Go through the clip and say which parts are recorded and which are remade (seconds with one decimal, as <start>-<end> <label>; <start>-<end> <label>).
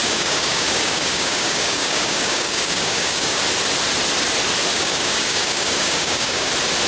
0.0-3.4 remade; 3.4-4.7 recorded; 4.7-6.5 remade; 6.5-6.9 recorded